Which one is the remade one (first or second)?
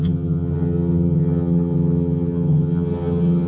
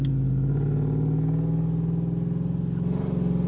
first